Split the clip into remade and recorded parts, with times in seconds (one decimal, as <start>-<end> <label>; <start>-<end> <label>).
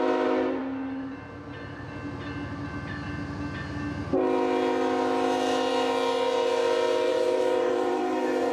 0.0-7.1 recorded; 7.1-8.5 remade